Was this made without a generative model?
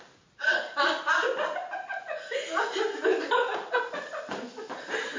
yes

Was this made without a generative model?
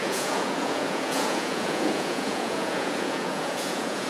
no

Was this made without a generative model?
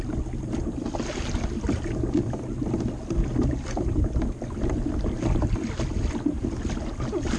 yes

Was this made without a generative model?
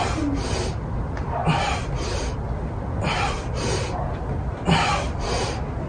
yes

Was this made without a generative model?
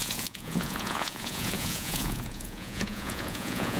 no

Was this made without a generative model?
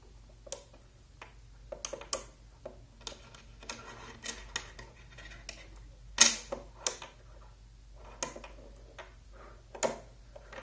yes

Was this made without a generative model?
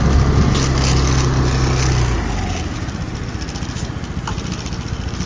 yes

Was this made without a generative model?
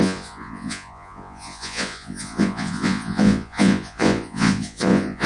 no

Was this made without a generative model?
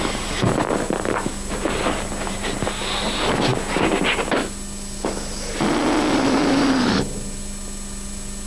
yes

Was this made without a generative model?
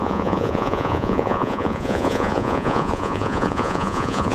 no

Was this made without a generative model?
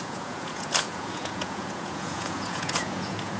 no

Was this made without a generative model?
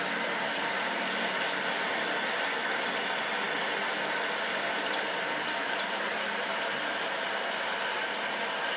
yes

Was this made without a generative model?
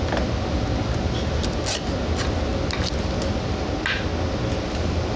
yes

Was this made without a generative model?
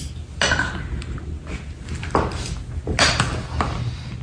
yes